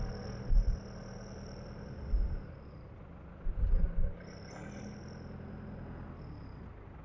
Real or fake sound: real